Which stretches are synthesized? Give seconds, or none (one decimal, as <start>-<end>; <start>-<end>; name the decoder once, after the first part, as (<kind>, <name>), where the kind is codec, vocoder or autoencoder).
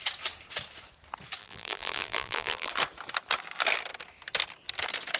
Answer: 1.4-2.7 (vocoder, BigVGAN v2)